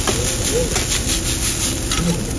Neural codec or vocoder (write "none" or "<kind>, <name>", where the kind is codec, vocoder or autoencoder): none